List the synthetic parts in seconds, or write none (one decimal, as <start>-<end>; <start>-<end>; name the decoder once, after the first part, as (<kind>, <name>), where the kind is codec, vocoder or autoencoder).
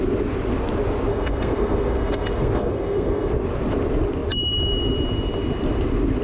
1.1-3.3 (codec, SNAC)